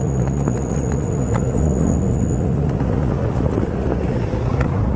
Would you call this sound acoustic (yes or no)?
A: no